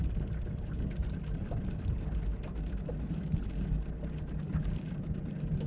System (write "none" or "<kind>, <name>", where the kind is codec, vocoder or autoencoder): none